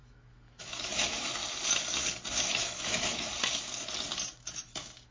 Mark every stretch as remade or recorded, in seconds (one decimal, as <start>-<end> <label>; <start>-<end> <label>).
0.0-1.4 remade; 1.4-2.5 recorded; 2.5-3.3 remade; 3.3-4.3 recorded; 4.3-5.1 remade